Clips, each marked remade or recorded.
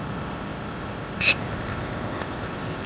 remade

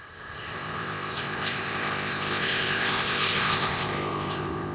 remade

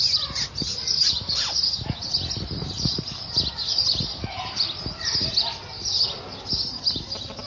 recorded